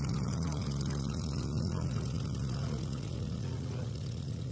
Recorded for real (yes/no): no